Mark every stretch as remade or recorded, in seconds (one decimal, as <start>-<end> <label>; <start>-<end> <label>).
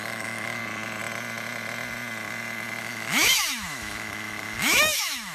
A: 0.0-0.6 remade; 0.6-2.8 recorded; 2.8-5.3 remade